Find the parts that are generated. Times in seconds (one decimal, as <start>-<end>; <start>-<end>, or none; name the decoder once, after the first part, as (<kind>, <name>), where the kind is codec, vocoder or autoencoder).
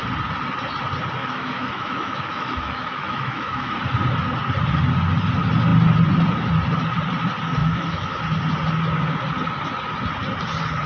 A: 1.2-3.8 (autoencoder, DAC-VAE); 7.6-8.2